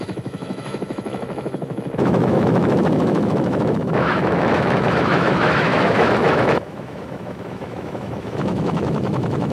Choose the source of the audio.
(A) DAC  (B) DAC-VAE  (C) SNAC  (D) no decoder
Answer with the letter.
B